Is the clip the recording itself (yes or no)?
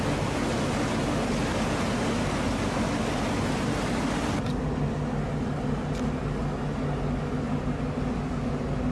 yes